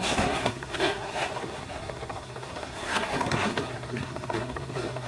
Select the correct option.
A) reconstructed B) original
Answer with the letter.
A